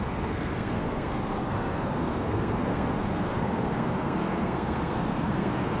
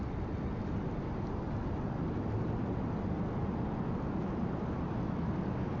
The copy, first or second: first